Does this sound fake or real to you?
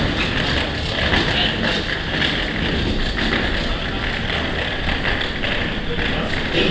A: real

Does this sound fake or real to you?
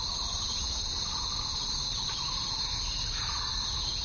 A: real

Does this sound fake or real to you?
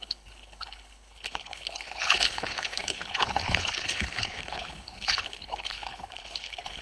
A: fake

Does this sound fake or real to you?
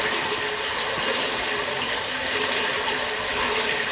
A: real